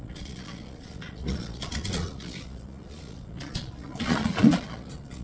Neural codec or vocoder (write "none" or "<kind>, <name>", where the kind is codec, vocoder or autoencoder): vocoder, Vocos